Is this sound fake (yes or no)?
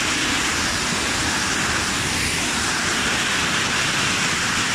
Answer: no